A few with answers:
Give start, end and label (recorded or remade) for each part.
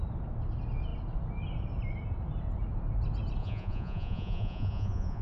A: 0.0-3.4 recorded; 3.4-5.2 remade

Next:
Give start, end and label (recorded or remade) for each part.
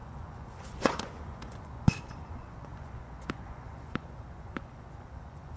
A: 0.0-5.6 remade